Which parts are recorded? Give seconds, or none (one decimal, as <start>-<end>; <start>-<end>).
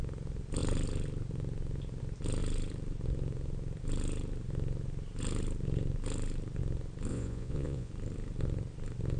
0.0-7.1; 7.9-9.2